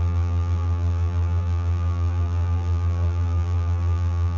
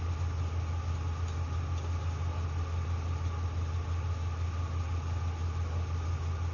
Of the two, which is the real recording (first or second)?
second